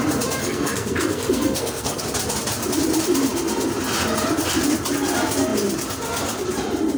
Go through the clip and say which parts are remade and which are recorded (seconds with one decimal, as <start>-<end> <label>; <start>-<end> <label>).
0.0-0.4 recorded; 0.4-2.0 remade; 2.0-7.0 recorded